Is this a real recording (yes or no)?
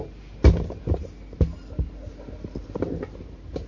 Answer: yes